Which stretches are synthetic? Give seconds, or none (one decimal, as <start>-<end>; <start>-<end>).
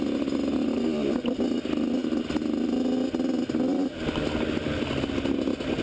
none